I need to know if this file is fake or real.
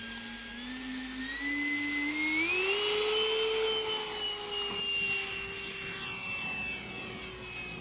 real